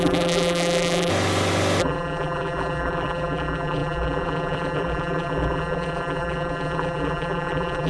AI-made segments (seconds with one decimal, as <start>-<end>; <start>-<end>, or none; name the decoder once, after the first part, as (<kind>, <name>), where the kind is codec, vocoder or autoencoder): 0.0-1.1 (vocoder, BigVGAN v2); 1.8-7.9